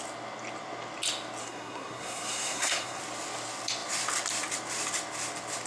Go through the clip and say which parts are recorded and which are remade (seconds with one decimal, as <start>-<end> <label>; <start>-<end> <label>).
0.0-1.4 recorded; 1.4-3.0 remade; 3.0-5.7 recorded